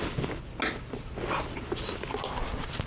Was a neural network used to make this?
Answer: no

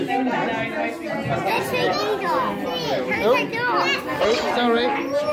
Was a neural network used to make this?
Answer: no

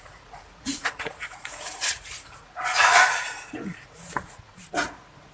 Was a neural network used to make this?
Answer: yes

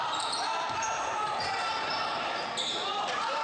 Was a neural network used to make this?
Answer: yes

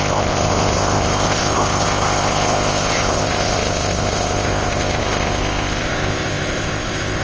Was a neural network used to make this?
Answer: yes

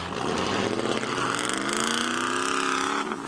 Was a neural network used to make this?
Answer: no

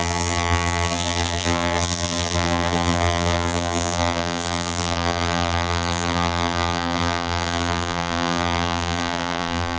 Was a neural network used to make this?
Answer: yes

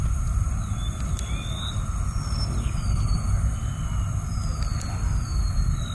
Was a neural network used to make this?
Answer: no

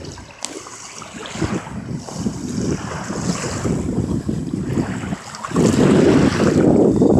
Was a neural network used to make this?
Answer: no